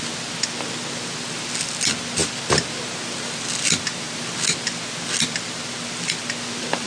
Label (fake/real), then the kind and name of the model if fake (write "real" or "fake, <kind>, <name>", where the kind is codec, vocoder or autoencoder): real